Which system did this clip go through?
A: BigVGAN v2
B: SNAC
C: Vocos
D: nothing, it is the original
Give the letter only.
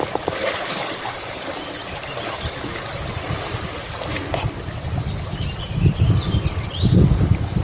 A